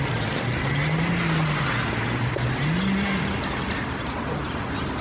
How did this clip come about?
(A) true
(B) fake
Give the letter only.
A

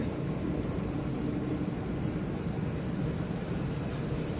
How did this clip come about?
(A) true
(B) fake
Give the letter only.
B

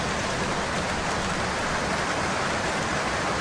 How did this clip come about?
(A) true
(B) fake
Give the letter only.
A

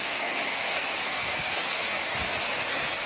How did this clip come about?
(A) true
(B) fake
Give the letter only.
B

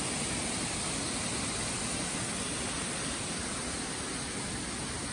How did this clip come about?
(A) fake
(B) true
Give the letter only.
B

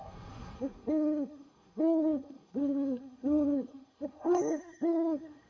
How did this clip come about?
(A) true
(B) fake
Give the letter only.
B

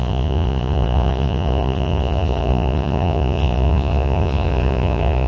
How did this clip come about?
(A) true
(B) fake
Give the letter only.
B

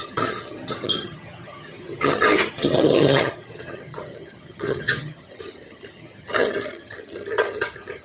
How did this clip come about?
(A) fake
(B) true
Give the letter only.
A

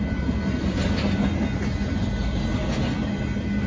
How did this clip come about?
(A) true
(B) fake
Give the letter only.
A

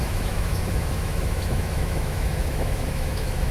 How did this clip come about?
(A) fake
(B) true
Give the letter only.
A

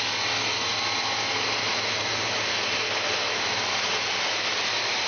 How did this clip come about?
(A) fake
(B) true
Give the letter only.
B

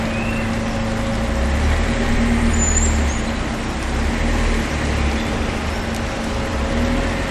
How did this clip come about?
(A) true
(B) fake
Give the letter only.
A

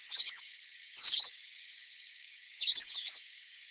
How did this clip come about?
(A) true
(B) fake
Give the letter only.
B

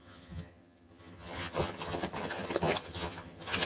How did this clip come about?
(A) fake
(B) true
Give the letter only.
A